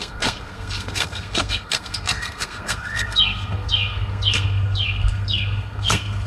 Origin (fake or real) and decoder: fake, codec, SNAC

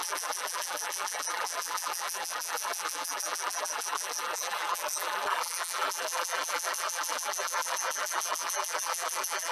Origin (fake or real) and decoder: fake, vocoder, BigVGAN v2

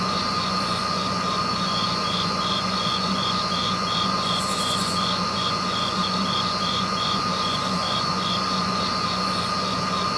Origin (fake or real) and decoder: fake, vocoder, Vocos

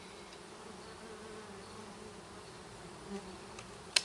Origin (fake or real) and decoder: real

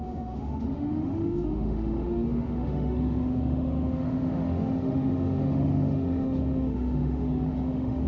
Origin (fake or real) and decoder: fake, autoencoder, DAC-VAE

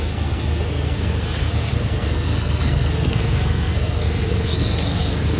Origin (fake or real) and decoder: fake, codec, SNAC